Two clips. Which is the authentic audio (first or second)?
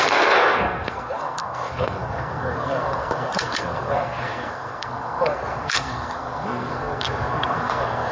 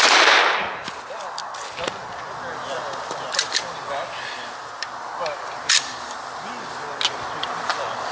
second